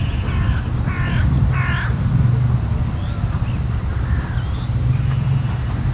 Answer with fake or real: real